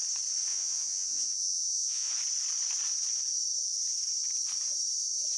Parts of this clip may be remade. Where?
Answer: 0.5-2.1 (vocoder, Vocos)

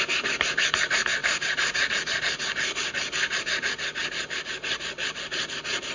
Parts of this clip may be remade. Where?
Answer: 1.2-2.2 (vocoder, BigVGAN v2); 4.0-5.5

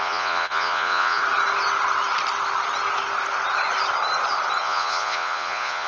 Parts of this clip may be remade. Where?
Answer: 0.0-1.2 (vocoder, Vocos); 4.6-5.9

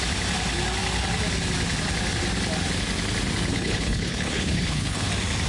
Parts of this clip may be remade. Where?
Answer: 3.5-5.1 (codec, HILCodec)

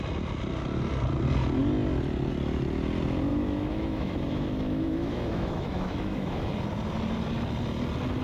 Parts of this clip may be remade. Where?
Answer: 3.3-6.5 (autoencoder, DAC-VAE)

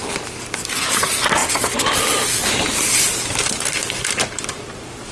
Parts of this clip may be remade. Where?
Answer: none

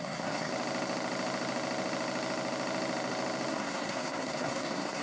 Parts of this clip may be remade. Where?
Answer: 0.0-0.5 (codec, SNAC); 3.5-5.0

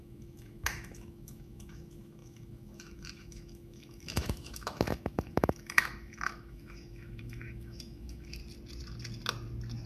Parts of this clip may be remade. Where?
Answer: 0.0-8.4 (autoencoder, DAC-VAE)